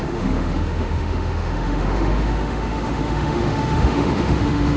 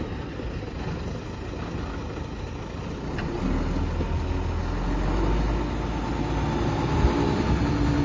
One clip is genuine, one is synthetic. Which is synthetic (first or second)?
first